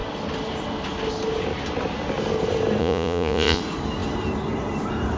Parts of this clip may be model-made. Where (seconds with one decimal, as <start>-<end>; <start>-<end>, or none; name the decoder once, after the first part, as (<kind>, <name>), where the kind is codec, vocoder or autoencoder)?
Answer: 2.8-3.6 (vocoder, Vocos)